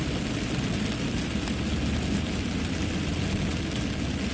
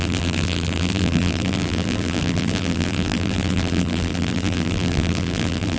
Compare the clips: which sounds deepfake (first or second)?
second